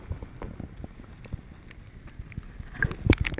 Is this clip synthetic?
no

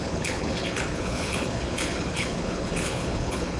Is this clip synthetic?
yes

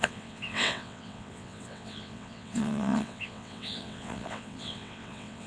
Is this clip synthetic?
yes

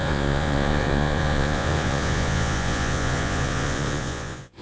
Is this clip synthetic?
yes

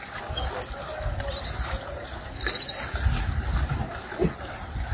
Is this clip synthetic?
no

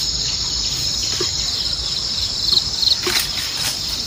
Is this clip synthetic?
no